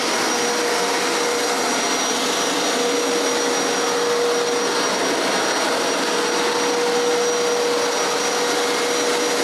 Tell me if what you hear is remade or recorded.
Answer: recorded